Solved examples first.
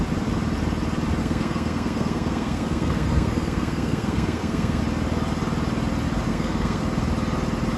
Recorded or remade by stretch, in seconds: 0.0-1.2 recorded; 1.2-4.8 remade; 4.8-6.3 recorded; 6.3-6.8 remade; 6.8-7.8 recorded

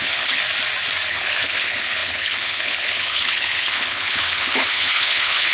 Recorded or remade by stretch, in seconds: 0.0-0.4 remade; 0.4-1.1 recorded; 1.1-5.5 remade

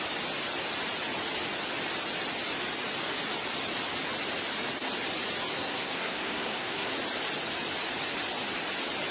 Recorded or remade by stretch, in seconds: 0.0-5.6 recorded; 5.6-6.9 remade; 6.9-9.1 recorded

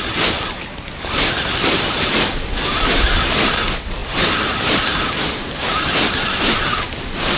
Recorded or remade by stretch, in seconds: 0.0-7.4 recorded

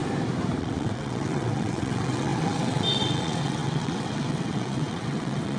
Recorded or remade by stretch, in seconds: 0.0-0.6 recorded; 0.6-5.6 remade

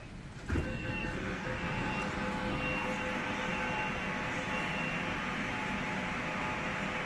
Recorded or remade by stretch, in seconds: 0.0-0.7 recorded; 0.7-1.9 remade; 1.9-7.1 recorded